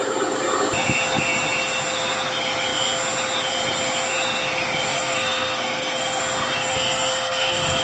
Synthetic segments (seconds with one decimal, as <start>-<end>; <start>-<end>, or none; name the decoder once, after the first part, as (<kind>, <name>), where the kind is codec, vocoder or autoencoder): 4.9-6.2 (codec, SNAC); 6.7-7.8